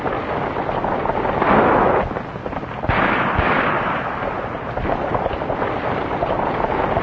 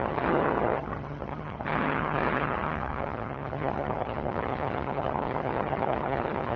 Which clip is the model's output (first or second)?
second